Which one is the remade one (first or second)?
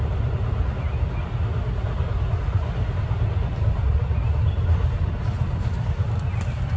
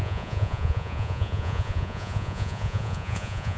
second